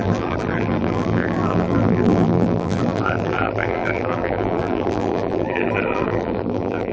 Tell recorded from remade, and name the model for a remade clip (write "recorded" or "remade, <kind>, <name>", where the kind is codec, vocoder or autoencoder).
remade, vocoder, BigVGAN v2